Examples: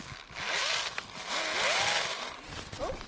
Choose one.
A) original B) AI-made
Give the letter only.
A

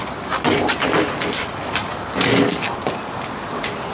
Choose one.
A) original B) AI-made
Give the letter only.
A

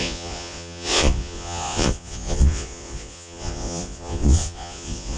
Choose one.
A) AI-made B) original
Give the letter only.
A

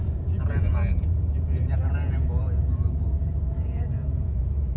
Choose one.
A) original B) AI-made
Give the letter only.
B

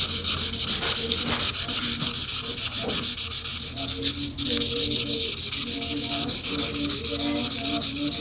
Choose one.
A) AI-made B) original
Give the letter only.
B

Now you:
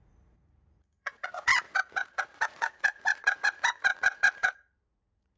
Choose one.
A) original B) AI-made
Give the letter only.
B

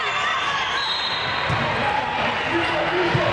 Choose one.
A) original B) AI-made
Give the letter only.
A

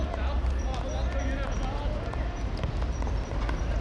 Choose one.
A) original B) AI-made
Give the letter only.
A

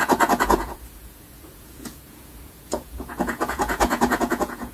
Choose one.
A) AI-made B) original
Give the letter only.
A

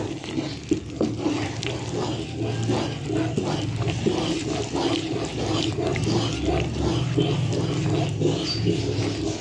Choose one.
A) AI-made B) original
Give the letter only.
B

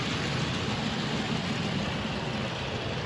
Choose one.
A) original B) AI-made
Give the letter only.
A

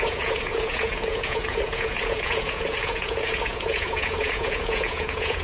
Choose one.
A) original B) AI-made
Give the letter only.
B